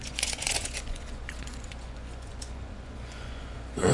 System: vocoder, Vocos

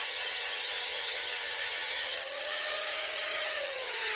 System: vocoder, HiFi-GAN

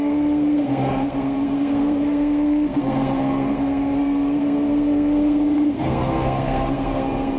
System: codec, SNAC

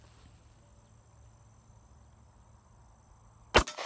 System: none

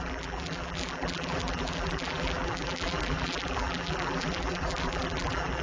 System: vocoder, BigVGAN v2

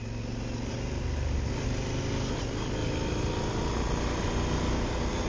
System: none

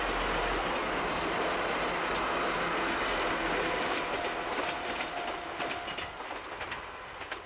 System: none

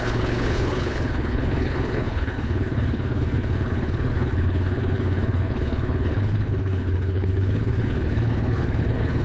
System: codec, HILCodec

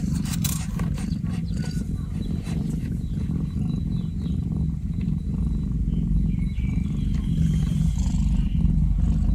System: vocoder, BigVGAN v2